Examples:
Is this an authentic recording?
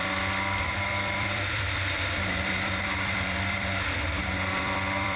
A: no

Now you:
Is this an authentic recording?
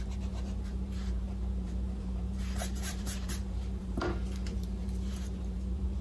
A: no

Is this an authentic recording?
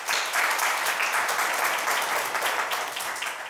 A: yes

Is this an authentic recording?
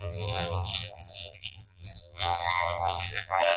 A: no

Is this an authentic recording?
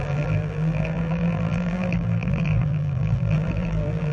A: no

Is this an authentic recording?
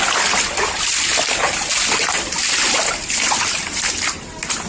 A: yes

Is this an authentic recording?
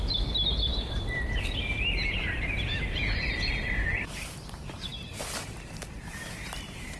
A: no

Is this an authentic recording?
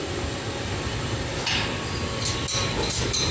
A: yes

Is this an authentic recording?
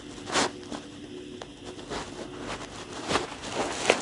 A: yes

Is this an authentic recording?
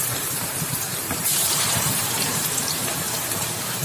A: no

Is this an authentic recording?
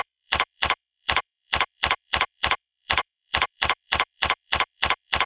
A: no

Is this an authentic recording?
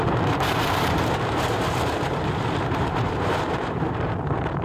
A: no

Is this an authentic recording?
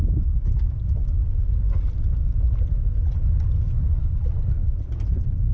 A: yes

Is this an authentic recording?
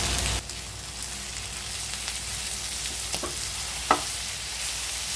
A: yes